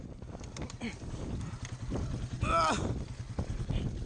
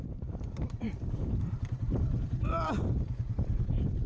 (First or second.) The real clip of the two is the first